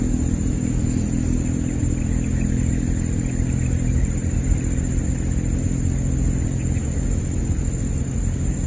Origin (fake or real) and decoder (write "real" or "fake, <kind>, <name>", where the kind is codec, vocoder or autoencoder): real